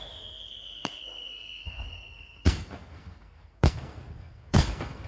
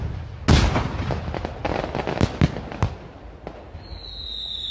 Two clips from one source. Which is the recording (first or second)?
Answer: second